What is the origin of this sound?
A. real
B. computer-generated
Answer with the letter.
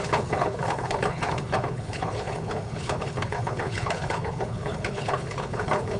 B